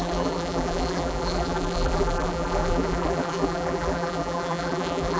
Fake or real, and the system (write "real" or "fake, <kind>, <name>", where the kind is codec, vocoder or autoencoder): fake, vocoder, BigVGAN v2